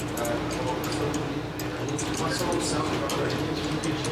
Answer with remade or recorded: recorded